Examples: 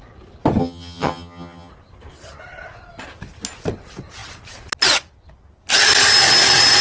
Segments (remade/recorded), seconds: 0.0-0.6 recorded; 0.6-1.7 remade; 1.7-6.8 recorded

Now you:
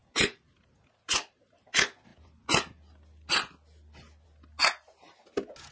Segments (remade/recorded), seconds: 0.0-5.7 recorded

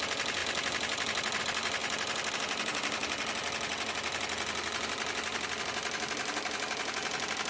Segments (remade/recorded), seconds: 0.0-7.5 recorded

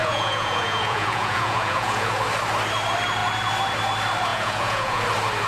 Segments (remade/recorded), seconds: 0.0-2.1 remade; 2.1-4.3 recorded; 4.3-5.0 remade; 5.0-5.5 recorded

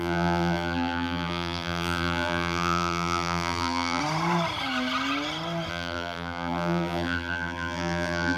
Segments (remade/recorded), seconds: 0.0-4.0 remade; 4.0-5.7 recorded; 5.7-8.4 remade

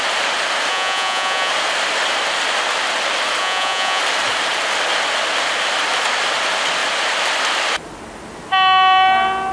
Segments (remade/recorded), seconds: 0.0-0.7 recorded; 0.7-1.5 remade; 1.5-3.4 recorded; 3.4-4.0 remade; 4.0-9.5 recorded

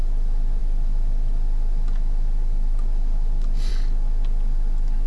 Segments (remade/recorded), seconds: 0.0-5.1 recorded